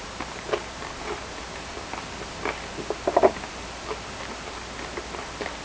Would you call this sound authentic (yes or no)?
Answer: no